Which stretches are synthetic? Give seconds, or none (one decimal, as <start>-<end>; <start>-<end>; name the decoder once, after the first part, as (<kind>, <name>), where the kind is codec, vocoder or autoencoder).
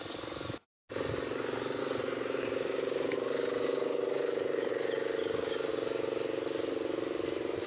1.8-4.7 (codec, DAC); 5.2-5.7